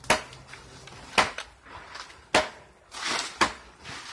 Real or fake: real